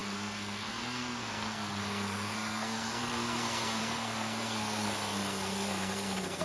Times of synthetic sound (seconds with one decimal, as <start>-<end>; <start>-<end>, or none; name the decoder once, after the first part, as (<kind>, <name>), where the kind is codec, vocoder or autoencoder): 0.0-6.4 (codec, SNAC)